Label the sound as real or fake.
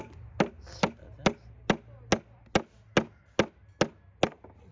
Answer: real